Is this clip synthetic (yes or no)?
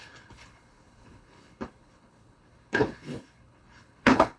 yes